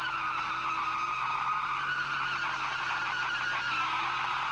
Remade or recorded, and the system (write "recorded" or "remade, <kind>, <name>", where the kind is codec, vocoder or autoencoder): recorded